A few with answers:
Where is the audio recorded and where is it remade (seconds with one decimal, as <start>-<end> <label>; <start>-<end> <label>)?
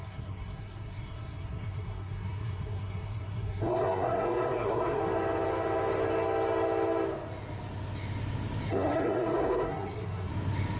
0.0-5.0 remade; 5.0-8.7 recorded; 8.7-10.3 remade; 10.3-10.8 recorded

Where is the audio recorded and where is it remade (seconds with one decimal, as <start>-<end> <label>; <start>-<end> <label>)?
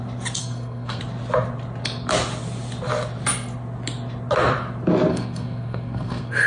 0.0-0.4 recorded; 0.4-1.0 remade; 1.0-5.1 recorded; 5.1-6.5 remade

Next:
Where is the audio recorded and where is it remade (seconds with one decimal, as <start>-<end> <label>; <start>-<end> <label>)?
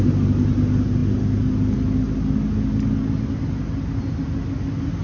0.0-5.0 recorded